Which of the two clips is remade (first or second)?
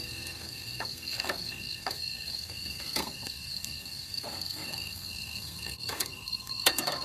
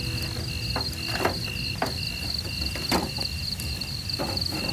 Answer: first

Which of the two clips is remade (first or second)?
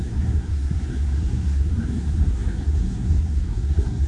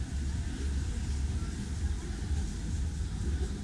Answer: first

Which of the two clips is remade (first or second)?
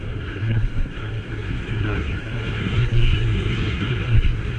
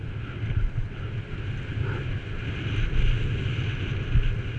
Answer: first